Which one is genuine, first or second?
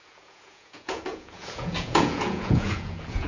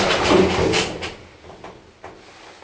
second